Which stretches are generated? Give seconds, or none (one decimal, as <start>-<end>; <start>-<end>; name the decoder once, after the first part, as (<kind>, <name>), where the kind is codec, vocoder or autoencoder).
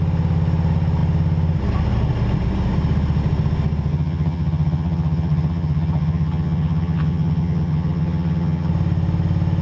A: 3.9-8.7 (vocoder, HiFi-GAN)